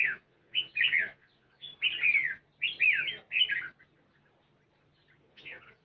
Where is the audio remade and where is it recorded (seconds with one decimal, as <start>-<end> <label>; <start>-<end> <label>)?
0.0-1.7 remade; 1.7-5.2 recorded; 5.2-5.8 remade